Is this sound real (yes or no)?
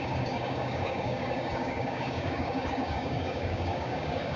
no